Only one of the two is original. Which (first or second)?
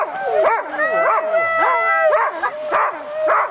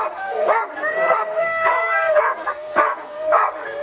first